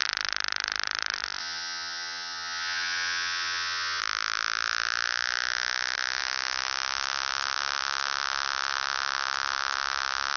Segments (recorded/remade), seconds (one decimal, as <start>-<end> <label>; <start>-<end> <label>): 0.0-1.4 recorded; 1.4-4.0 remade; 4.0-10.4 recorded

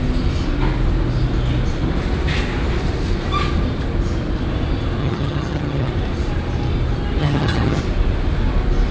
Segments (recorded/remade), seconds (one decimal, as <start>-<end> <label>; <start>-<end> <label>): 0.0-5.0 recorded; 5.0-5.9 remade; 5.9-7.2 recorded; 7.2-7.8 remade; 7.8-8.9 recorded

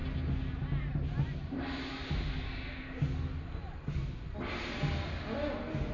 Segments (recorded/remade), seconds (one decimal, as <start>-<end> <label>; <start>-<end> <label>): 0.0-5.9 recorded

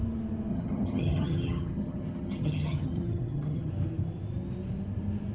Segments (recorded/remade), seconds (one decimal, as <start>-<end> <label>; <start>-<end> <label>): 0.0-0.5 recorded; 0.5-3.7 remade; 3.7-5.3 recorded

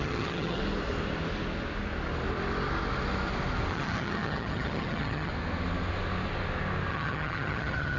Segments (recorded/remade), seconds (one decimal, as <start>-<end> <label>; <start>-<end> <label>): 0.0-0.6 remade; 0.6-3.7 recorded; 3.7-5.3 remade; 5.3-6.9 recorded; 6.9-8.0 remade

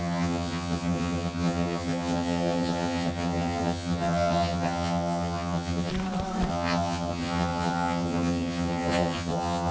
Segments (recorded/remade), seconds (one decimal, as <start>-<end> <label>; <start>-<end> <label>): 0.0-5.9 remade; 5.9-6.5 recorded; 6.5-9.7 remade